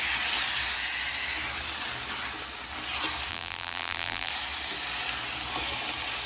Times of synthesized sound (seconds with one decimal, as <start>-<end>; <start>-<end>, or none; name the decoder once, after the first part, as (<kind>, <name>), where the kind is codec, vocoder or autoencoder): 3.3-4.3 (vocoder, BigVGAN v2)